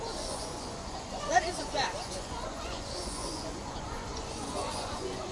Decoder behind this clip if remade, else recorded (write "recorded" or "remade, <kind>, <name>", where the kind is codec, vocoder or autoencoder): remade, vocoder, Vocos